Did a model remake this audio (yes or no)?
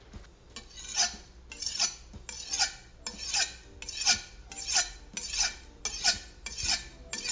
no